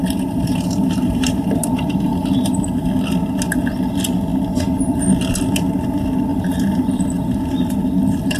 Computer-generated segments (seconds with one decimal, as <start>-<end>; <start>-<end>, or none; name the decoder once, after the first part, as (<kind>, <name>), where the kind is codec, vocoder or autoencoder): 0.0-2.9 (vocoder, BigVGAN v2); 6.3-7.4